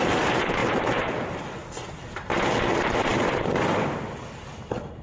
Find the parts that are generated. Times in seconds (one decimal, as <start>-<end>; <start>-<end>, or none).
none